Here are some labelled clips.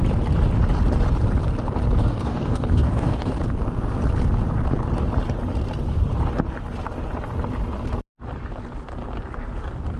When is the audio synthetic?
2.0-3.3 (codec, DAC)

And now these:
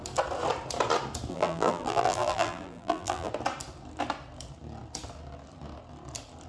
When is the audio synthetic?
1.3-3.3 (vocoder, BigVGAN v2)